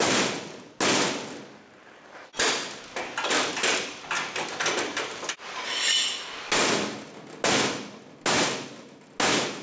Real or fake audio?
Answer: real